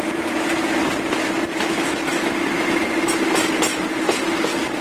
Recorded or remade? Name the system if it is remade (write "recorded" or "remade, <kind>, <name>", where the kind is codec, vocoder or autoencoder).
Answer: recorded